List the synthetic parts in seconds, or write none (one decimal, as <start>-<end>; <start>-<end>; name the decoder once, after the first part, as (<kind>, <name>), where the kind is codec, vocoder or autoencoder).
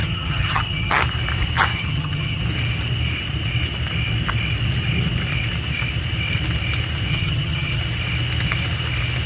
0.0-1.0 (vocoder, HiFi-GAN); 1.7-2.4; 7.1-7.8